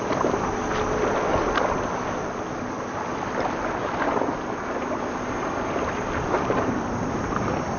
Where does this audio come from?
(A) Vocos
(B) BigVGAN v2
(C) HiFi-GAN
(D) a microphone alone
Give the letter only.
D